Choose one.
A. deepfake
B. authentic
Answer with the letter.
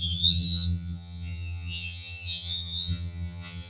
A